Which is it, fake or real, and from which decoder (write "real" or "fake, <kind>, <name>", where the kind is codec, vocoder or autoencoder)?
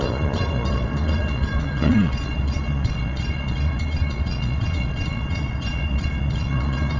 fake, vocoder, Vocos